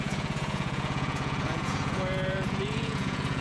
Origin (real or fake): fake